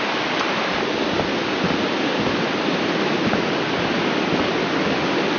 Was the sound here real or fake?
real